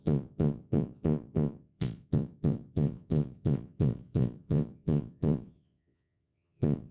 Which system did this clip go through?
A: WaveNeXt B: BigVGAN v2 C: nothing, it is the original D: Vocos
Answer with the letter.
D